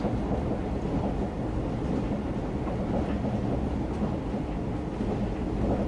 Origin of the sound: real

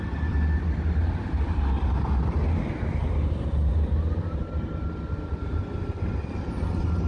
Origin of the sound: real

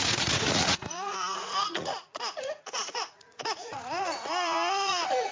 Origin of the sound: fake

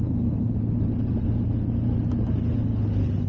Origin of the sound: real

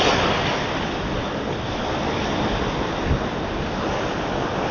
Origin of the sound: real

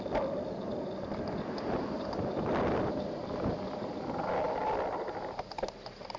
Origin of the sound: real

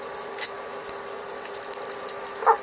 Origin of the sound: real